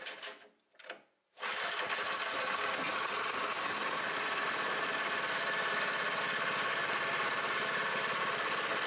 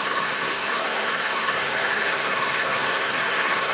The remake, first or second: second